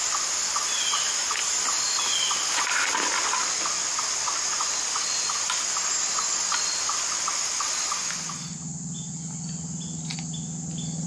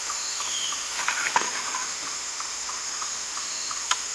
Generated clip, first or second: second